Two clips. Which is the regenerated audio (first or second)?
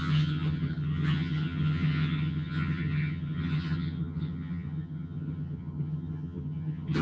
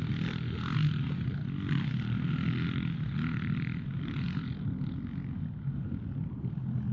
first